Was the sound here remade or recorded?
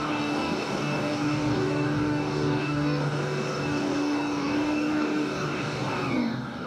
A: remade